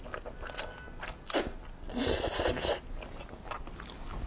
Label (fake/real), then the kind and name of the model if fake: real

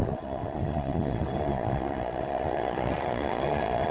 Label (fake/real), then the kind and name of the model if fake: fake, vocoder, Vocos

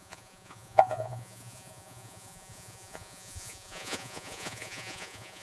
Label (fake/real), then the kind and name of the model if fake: fake, vocoder, Vocos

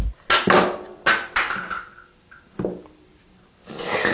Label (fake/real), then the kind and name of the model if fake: real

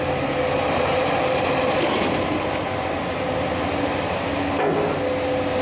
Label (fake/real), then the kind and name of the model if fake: real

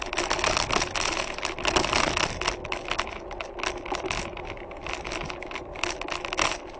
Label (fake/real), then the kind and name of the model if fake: real